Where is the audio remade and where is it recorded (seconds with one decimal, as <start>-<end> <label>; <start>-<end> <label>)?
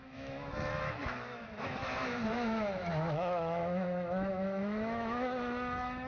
0.0-6.1 remade